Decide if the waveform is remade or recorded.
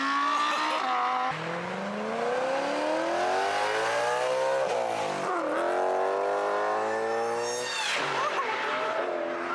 recorded